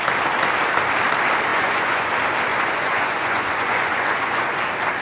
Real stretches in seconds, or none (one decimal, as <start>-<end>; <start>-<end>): 0.0-1.5; 2.1-2.5; 4.6-5.0